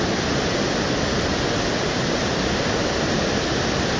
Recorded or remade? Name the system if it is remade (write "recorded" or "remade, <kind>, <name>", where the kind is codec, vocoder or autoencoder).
remade, vocoder, BigVGAN v2